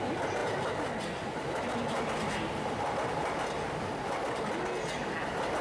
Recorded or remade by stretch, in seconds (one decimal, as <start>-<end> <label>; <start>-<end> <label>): 0.0-5.6 recorded